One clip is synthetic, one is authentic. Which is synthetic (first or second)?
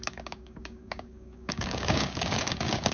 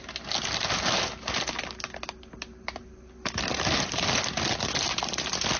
first